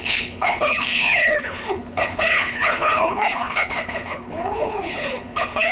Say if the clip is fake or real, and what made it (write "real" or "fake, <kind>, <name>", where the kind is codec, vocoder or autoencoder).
fake, codec, HILCodec